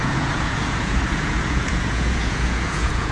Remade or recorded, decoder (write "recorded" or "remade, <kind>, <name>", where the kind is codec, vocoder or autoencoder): remade, vocoder, Vocos